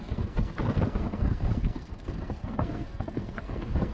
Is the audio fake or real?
fake